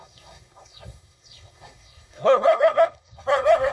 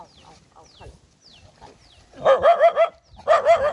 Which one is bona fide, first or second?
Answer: second